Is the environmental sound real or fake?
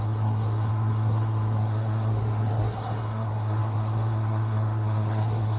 fake